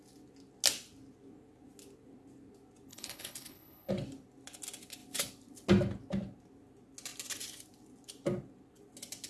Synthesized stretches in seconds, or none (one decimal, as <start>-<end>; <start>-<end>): 2.9-3.9